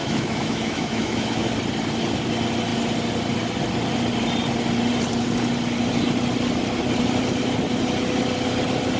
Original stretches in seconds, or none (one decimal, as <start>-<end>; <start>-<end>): 1.5-9.0